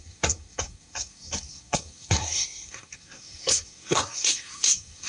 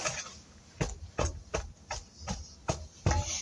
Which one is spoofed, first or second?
first